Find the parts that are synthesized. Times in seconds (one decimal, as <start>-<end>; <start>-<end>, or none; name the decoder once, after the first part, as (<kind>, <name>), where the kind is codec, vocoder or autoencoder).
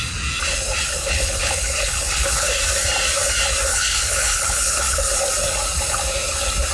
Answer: 1.0-2.5 (codec, HILCodec); 3.7-5.2